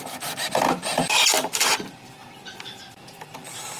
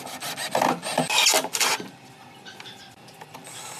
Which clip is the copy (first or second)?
first